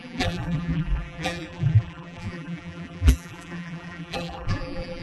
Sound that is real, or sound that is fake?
fake